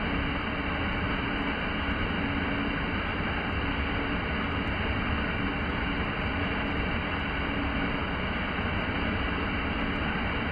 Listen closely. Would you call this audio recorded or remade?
recorded